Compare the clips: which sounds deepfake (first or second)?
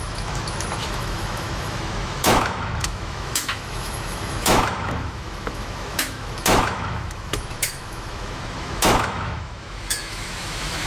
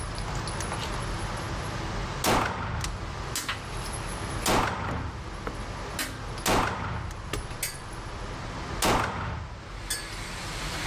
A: first